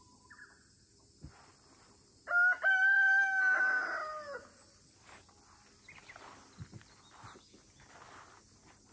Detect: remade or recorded recorded